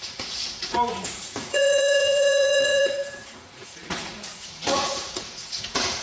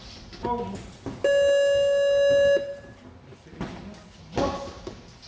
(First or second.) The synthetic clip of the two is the first